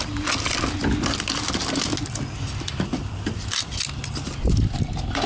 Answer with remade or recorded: recorded